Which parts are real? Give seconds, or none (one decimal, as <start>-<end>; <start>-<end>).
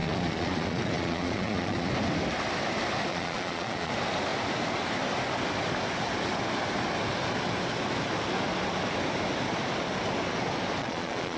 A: 1.9-3.1; 3.9-10.8